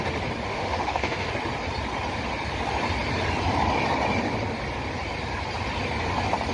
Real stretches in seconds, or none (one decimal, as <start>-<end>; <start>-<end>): 0.0-0.5; 1.3-6.5